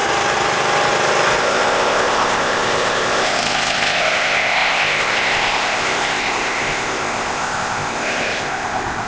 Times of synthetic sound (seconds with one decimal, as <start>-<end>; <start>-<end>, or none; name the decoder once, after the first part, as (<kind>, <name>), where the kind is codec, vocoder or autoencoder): 1.4-9.1 (codec, ZipCodec)